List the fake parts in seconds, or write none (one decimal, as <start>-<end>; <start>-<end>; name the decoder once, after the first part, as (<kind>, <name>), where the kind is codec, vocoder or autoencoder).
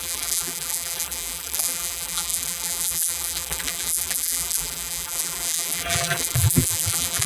0.0-7.3 (vocoder, BigVGAN v2)